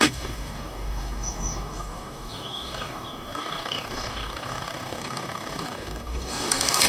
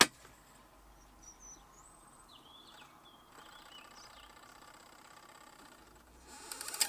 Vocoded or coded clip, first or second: first